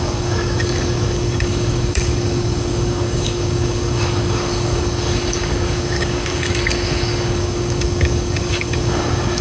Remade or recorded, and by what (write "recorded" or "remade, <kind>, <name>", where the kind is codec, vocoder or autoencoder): remade, codec, DAC